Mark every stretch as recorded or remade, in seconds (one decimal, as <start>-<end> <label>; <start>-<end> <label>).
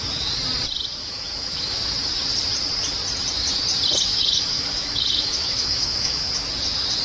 0.0-1.0 recorded; 1.0-1.9 remade; 1.9-4.1 recorded; 4.1-6.3 remade; 6.3-7.0 recorded